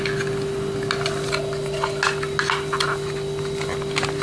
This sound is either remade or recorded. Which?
recorded